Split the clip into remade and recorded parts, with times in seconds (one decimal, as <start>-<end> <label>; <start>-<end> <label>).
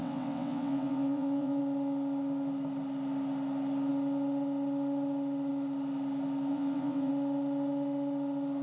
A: 0.0-1.6 remade; 1.6-6.5 recorded; 6.5-7.1 remade; 7.1-8.6 recorded